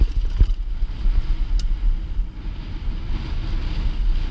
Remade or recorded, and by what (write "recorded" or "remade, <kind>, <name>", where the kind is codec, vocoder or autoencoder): recorded